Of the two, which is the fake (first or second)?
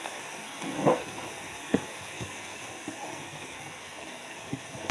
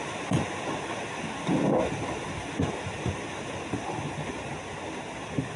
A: first